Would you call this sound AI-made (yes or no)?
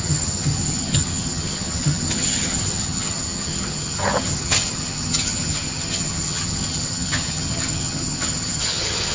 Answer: yes